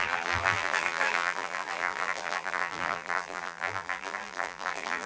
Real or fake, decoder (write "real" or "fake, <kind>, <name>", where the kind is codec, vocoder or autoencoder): fake, vocoder, BigVGAN v2